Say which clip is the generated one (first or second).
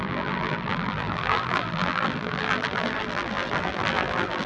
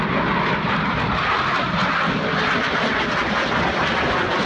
first